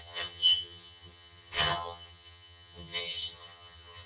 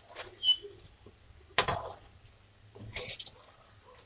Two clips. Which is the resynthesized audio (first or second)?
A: first